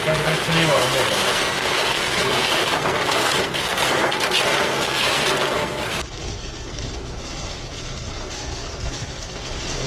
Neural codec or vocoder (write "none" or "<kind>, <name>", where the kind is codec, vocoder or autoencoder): codec, SNAC